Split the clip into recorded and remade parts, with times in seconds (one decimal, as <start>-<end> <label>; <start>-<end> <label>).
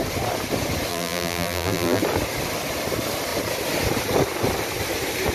0.0-0.9 recorded; 0.9-2.0 remade; 2.0-5.3 recorded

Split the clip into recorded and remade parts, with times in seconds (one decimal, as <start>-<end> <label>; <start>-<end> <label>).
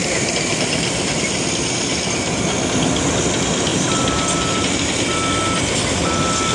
0.0-1.2 remade; 1.2-3.7 recorded; 3.7-5.0 remade; 5.0-6.5 recorded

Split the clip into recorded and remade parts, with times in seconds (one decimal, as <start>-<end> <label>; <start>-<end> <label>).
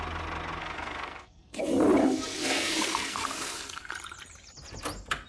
0.0-0.6 recorded; 0.6-1.6 remade; 1.6-2.0 recorded; 2.0-3.9 remade; 3.9-5.3 recorded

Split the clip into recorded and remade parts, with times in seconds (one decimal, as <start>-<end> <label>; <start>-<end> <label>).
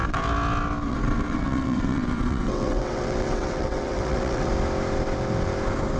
0.0-0.9 recorded; 0.9-4.5 remade; 4.5-6.0 recorded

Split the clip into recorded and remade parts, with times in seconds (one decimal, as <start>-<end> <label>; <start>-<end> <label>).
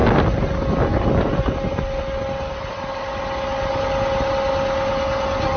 0.0-5.6 recorded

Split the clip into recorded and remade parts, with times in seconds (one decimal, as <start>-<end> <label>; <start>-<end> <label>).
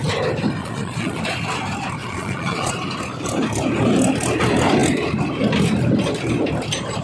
0.0-0.6 recorded; 0.6-1.2 remade; 1.2-2.0 recorded; 2.0-2.7 remade; 2.7-7.0 recorded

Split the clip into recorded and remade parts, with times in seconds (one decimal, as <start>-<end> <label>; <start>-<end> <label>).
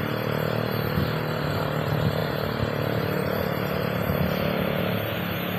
0.0-5.6 recorded